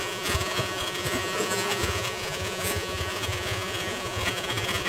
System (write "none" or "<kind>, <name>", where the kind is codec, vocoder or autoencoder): vocoder, Vocos